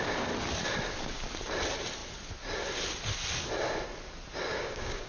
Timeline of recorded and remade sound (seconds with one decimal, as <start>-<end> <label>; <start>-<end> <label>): 0.0-4.5 recorded; 4.5-5.1 remade